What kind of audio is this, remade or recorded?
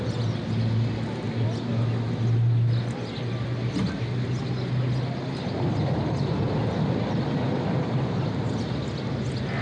recorded